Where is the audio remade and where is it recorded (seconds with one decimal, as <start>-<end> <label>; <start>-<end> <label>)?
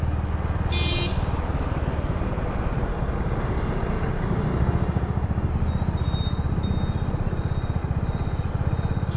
0.0-2.9 recorded; 2.9-5.5 remade; 5.5-9.2 recorded